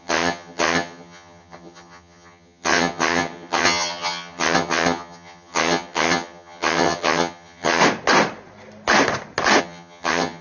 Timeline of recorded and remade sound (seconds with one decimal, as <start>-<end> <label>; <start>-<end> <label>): 0.0-7.8 remade; 7.8-9.6 recorded; 9.6-10.4 remade